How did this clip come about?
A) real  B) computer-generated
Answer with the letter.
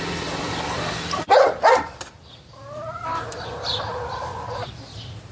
B